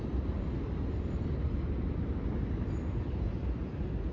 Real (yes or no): yes